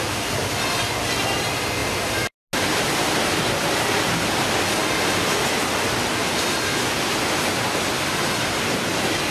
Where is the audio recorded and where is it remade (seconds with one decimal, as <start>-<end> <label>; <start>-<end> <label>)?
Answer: 0.0-9.3 recorded